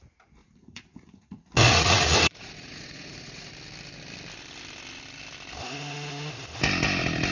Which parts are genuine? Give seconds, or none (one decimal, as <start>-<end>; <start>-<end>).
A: 0.0-0.4; 3.5-7.3